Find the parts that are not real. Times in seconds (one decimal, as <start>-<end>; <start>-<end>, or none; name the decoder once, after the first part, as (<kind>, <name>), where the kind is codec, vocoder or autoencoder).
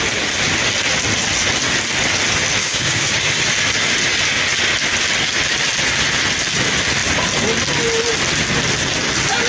2.6-3.3 (codec, DAC)